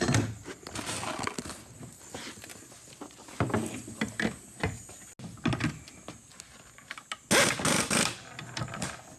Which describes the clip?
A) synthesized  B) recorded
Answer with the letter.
B